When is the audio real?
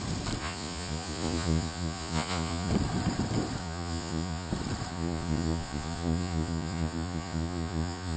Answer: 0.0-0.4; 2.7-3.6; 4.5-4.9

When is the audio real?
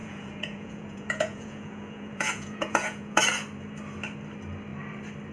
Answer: 3.2-5.3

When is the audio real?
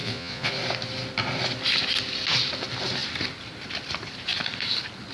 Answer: 0.5-5.1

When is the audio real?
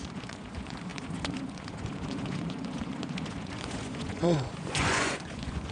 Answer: none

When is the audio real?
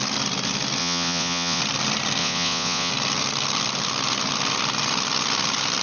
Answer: 0.0-0.8; 1.6-2.2; 2.9-5.8